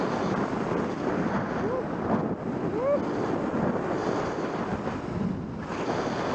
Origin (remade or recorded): recorded